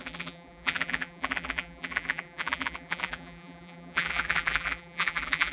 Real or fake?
fake